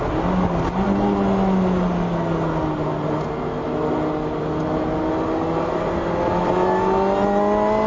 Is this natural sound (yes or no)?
yes